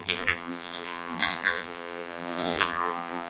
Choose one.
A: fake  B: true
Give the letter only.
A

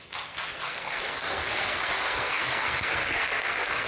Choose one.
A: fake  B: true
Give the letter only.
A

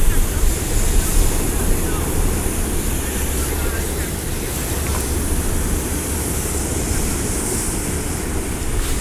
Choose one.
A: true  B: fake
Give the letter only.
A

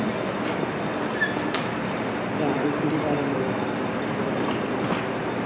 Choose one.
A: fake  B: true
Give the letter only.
B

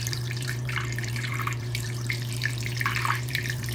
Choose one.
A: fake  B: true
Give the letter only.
A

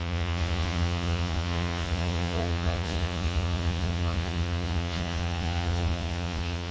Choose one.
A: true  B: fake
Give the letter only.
B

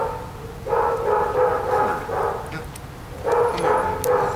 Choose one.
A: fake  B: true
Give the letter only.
B